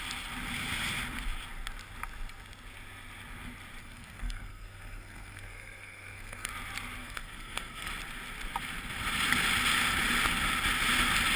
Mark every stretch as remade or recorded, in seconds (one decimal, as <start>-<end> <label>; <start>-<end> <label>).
0.0-3.8 recorded; 3.8-6.5 remade; 6.5-7.0 recorded; 7.0-7.9 remade; 7.9-11.4 recorded